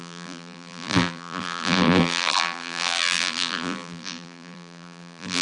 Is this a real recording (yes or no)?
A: no